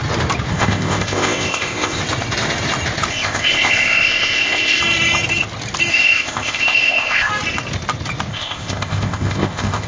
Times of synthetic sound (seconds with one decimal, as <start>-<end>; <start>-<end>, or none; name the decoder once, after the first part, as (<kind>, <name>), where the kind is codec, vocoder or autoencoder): 0.5-2.0 (codec, ZipCodec); 3.1-4.8; 5.9-7.3; 8.3-9.9

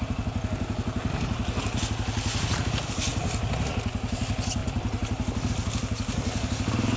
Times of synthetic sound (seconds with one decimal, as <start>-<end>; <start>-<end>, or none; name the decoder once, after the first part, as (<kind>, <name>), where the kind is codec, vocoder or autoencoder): none

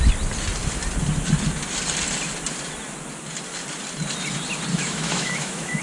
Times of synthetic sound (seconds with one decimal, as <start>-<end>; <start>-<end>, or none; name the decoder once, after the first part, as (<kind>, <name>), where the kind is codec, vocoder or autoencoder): 4.7-5.8 (autoencoder, DAC-VAE)

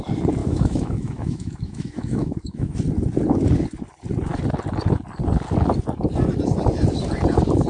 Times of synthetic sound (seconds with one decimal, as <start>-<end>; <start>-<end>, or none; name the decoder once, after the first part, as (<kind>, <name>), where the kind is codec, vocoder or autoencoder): 0.4-2.7 (autoencoder, DAC-VAE)

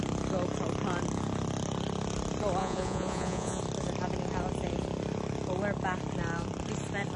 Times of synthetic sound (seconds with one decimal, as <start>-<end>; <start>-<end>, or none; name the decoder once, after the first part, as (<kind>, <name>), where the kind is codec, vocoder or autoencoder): 2.6-3.6 (vocoder, Vocos)